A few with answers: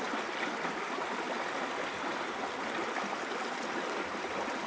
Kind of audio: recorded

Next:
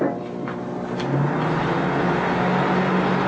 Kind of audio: recorded